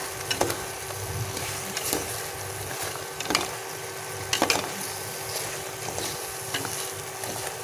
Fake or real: real